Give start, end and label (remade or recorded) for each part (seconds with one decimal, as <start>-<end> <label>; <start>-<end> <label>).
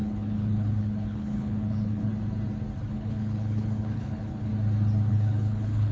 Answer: 0.0-2.1 remade; 2.1-2.9 recorded; 2.9-4.5 remade; 4.5-5.1 recorded; 5.1-5.9 remade